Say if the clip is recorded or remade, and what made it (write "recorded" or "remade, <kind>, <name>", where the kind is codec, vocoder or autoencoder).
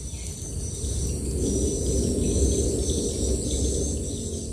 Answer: recorded